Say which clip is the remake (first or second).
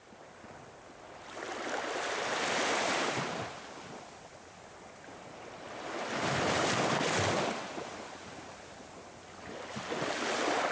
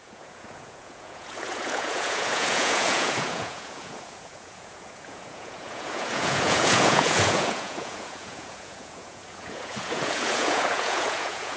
second